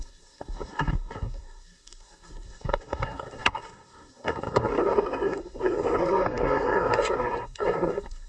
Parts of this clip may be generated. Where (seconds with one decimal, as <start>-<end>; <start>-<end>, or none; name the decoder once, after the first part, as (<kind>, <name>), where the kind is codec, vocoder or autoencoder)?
0.0-8.3 (codec, SNAC)